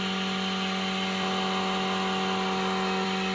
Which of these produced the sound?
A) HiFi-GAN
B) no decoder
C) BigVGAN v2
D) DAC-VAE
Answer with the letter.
B